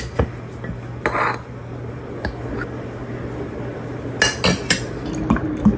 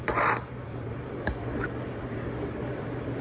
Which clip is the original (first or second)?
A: first